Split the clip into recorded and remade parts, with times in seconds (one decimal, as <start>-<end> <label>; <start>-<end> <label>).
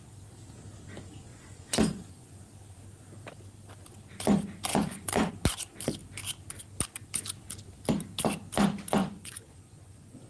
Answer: 0.0-1.3 recorded; 1.3-2.4 remade; 2.4-4.7 recorded; 4.7-5.3 remade; 5.3-9.0 recorded; 9.0-10.3 remade